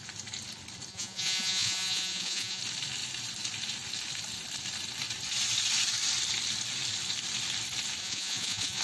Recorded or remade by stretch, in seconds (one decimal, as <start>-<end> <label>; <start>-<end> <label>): 0.0-0.9 recorded; 0.9-2.6 remade; 2.6-8.0 recorded; 8.0-8.8 remade